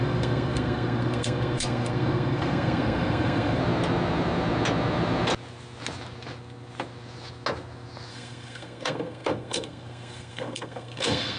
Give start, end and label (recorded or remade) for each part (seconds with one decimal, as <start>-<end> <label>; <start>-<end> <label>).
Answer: 0.0-3.6 remade; 3.6-8.1 recorded; 8.1-11.4 remade